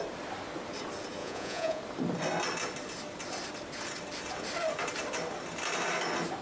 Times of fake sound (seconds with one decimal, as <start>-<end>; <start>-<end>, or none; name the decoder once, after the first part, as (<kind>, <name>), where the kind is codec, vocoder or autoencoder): 1.2-1.8 (vocoder, Vocos)

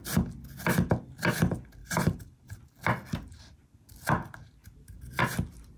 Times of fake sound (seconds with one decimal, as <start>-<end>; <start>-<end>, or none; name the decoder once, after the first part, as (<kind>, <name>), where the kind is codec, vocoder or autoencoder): 1.8-2.6 (vocoder, BigVGAN v2); 4.6-5.2